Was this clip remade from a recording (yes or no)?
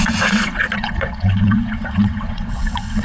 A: yes